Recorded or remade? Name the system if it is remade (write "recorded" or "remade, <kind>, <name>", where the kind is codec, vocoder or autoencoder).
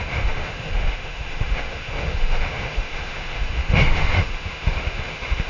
remade, autoencoder, DAC-VAE